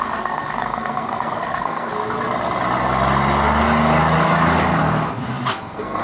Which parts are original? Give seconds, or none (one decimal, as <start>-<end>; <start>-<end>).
1.9-5.5